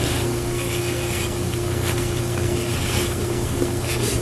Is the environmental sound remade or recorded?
remade